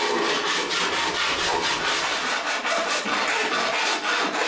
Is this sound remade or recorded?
recorded